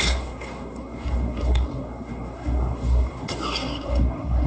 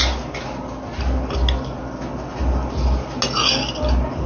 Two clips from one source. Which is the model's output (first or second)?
first